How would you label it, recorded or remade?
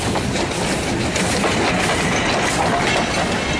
recorded